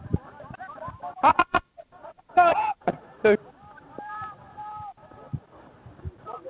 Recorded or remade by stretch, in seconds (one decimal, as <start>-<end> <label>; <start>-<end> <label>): 0.0-1.3 recorded; 1.3-3.2 remade; 3.2-6.5 recorded